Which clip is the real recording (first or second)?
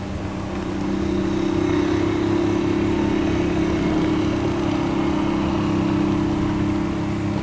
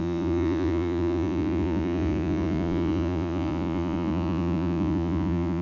first